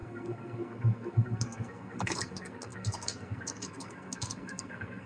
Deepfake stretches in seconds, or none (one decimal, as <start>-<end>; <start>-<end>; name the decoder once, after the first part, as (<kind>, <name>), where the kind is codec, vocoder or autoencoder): 0.0-5.1 (codec, SNAC)